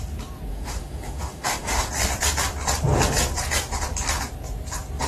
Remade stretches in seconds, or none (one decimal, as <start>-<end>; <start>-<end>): 0.5-1.9